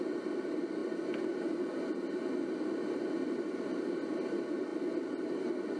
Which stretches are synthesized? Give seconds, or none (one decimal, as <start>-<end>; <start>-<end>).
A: none